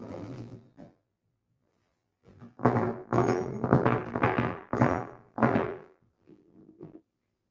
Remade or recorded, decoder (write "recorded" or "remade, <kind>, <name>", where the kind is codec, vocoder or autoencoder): remade, vocoder, BigVGAN v2